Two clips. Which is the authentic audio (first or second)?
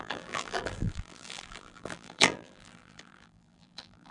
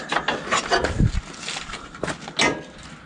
second